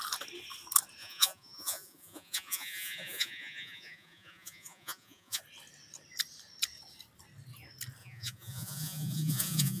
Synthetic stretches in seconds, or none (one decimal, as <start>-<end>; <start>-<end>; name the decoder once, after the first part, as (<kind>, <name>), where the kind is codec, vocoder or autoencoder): 1.0-5.4 (vocoder, Vocos); 8.0-9.8